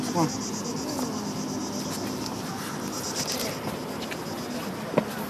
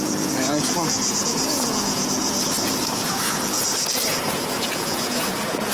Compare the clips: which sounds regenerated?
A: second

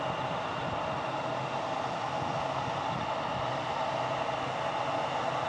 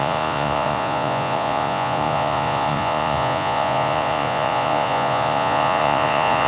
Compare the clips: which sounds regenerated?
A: second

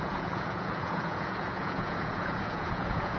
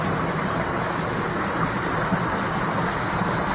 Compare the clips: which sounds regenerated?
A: first